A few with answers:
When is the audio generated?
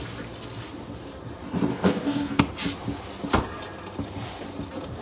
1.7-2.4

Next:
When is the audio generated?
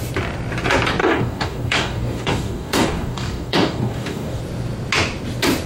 1.0-4.4